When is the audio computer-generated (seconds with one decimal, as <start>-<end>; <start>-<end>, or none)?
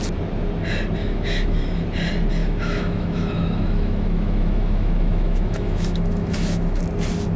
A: 1.0-1.6; 2.4-6.8